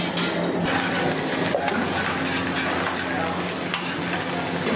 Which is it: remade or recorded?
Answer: recorded